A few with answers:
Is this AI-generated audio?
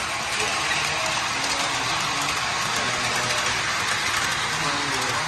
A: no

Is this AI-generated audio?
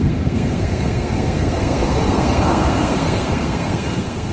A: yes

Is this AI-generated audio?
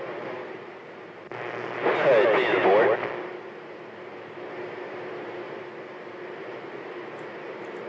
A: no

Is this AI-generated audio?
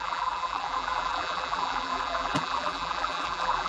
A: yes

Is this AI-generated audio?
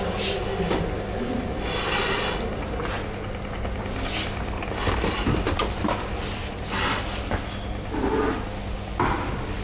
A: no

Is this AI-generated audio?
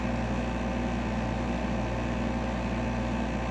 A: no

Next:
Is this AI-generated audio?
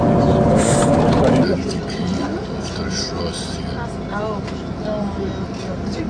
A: no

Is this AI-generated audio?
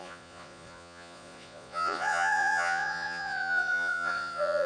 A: yes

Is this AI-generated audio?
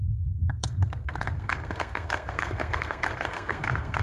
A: yes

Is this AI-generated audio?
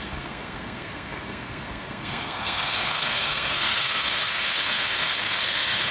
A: yes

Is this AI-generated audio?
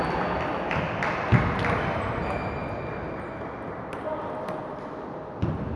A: no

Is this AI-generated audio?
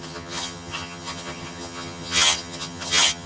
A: yes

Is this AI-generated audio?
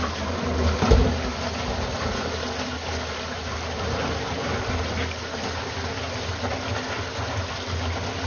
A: no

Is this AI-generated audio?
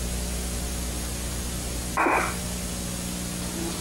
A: no